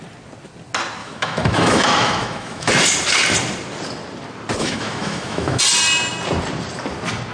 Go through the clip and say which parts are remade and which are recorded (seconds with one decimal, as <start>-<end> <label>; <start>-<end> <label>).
0.0-1.0 recorded; 1.0-2.7 remade; 2.7-4.6 recorded; 4.6-5.6 remade; 5.6-7.3 recorded